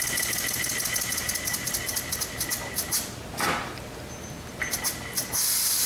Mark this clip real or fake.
real